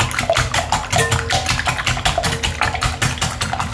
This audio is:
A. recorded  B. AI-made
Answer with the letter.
A